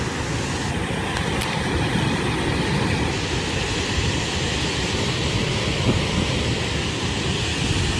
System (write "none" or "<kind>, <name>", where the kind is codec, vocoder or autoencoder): none